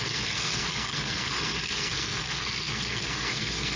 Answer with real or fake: fake